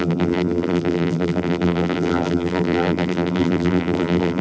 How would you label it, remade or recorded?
remade